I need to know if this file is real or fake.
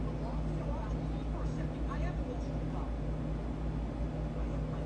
real